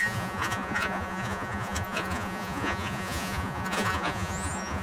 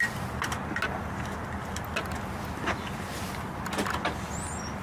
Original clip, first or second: second